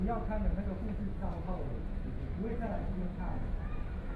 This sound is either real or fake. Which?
fake